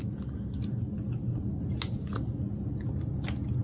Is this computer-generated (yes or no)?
no